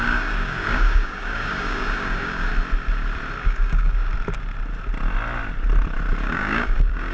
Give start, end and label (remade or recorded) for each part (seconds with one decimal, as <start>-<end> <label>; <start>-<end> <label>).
0.0-2.5 remade; 2.5-3.4 recorded; 3.4-4.1 remade; 4.1-6.2 recorded; 6.2-7.1 remade